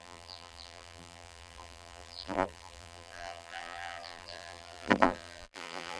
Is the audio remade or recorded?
remade